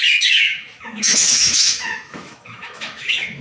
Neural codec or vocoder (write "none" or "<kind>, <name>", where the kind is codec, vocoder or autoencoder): autoencoder, DAC-VAE